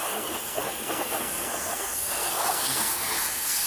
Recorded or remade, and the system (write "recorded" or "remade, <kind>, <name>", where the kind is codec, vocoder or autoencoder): remade, codec, SNAC